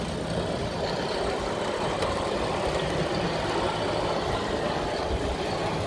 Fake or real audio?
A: real